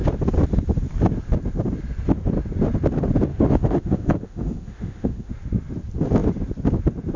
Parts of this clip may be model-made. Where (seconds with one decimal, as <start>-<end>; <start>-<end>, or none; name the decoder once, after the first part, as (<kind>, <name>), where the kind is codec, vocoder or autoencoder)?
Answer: 3.3-5.3 (autoencoder, DAC-VAE)